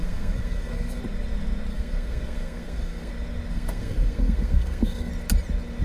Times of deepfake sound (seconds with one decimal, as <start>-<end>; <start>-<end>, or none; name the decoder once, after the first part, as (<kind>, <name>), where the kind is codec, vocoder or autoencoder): 0.0-1.0 (codec, SNAC); 1.7-3.1; 3.5-5.1